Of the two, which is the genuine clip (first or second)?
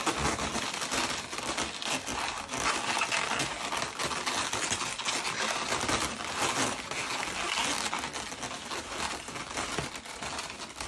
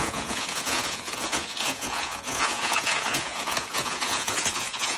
first